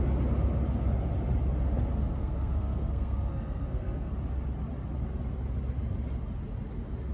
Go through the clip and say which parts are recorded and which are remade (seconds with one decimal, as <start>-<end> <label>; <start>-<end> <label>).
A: 0.0-2.2 recorded; 2.2-4.1 remade; 4.1-7.1 recorded